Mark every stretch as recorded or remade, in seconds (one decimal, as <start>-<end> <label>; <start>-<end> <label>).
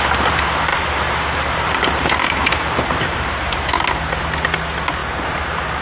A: 0.0-0.7 recorded; 0.7-3.7 remade; 3.7-5.0 recorded; 5.0-5.8 remade